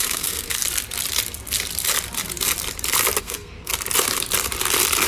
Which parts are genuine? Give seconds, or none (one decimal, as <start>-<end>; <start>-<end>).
0.6-3.2; 3.7-5.1